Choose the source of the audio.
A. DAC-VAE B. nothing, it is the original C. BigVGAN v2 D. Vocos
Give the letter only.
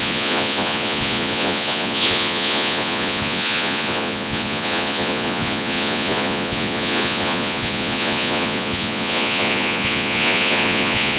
D